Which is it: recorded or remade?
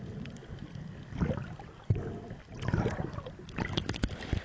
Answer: recorded